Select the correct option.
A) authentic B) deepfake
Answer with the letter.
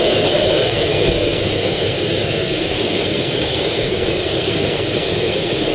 B